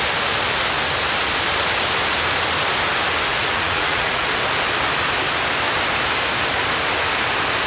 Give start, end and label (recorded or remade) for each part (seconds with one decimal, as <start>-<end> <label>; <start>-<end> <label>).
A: 0.0-3.3 recorded; 3.3-4.2 remade; 4.2-7.7 recorded